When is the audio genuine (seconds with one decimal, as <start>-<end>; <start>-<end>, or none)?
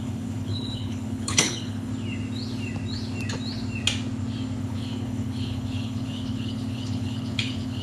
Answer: 1.9-4.6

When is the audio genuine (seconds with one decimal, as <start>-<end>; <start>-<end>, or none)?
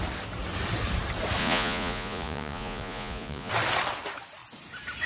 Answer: 0.0-1.4; 3.5-5.1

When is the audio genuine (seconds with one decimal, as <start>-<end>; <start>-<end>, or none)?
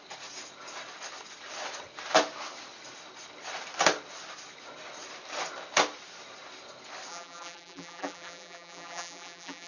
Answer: 0.0-7.1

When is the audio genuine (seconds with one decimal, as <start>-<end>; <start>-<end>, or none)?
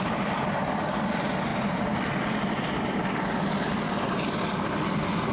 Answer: 0.0-5.3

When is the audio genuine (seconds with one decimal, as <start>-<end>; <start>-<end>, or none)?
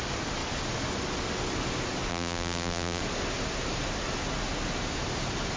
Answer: 0.0-2.1; 3.0-5.6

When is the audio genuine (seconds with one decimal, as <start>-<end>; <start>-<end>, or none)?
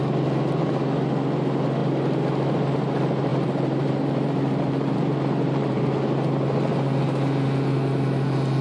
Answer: 0.0-3.3; 5.9-8.6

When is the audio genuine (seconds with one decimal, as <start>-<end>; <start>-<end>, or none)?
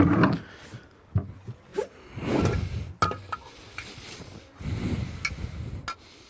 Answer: 0.0-6.3